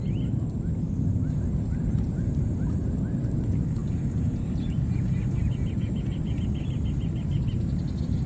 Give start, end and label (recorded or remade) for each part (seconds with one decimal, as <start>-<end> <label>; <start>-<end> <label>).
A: 0.0-3.8 recorded; 3.8-6.4 remade; 6.4-8.3 recorded